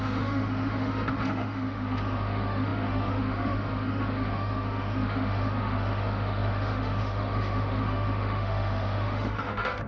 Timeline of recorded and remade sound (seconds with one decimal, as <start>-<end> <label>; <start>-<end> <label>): 0.0-9.9 remade